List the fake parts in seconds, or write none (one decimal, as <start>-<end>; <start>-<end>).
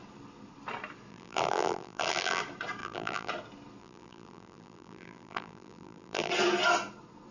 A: 1.1-2.4; 2.8-3.3; 3.8-6.3